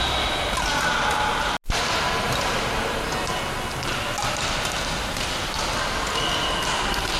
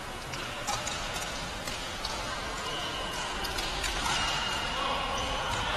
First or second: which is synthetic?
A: second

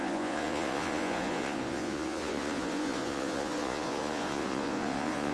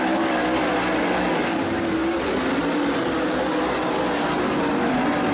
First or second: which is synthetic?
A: first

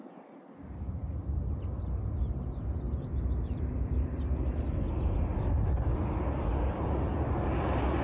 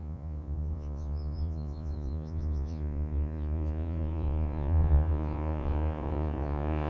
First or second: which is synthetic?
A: second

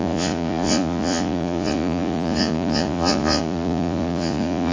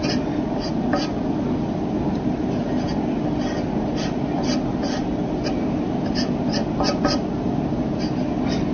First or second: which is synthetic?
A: first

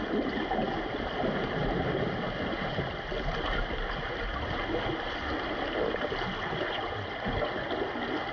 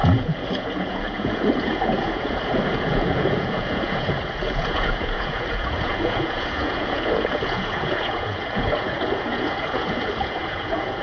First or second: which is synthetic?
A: second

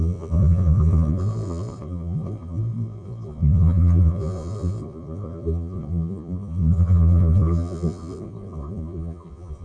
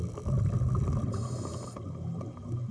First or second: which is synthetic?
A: first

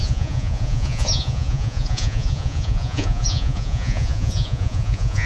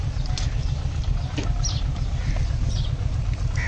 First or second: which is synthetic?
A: first